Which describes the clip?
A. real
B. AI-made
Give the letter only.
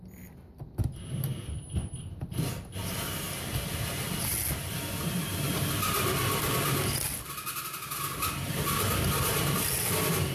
A